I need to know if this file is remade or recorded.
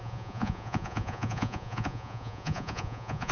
remade